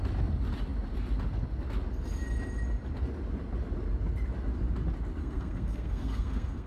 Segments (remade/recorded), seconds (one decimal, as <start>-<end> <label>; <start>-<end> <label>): 0.0-5.2 recorded; 5.2-6.7 remade